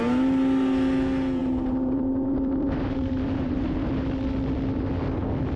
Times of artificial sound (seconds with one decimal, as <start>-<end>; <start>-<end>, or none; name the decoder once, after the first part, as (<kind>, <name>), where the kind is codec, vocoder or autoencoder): 1.4-3.7 (vocoder, BigVGAN v2)